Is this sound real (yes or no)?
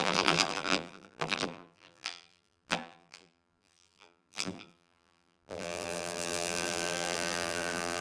no